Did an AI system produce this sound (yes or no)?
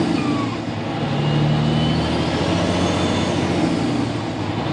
no